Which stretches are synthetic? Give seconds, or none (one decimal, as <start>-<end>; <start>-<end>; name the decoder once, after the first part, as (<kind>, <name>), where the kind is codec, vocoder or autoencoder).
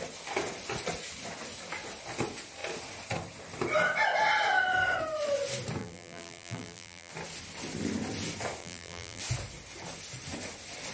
5.8-7.1 (vocoder, BigVGAN v2); 8.6-9.2